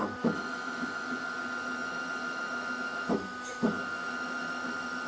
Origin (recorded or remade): remade